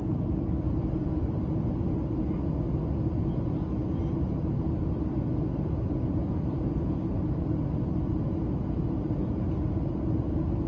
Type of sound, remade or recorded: recorded